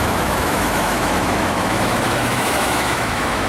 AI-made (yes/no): yes